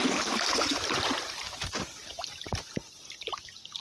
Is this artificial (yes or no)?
no